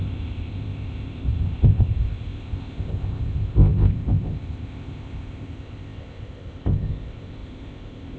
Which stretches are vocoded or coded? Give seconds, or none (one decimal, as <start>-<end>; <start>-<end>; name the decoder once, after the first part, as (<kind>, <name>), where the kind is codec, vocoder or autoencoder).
0.0-8.2 (codec, ZipCodec)